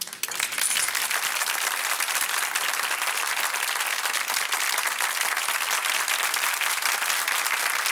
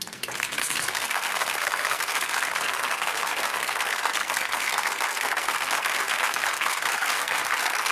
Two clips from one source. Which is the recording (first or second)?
first